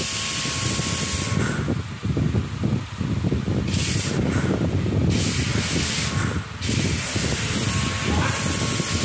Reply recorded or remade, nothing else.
recorded